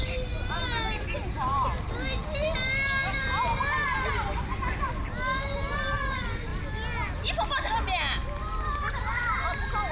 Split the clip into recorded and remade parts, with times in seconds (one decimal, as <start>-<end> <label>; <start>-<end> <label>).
0.0-9.9 recorded